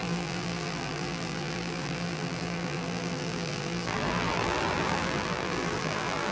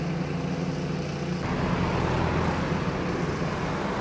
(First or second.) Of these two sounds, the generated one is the first